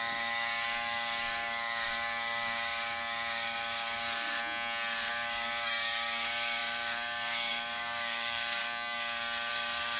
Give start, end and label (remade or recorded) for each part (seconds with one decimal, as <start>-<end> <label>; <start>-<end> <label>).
0.0-4.4 remade; 4.4-5.1 recorded; 5.1-8.6 remade; 8.6-9.5 recorded; 9.5-10.0 remade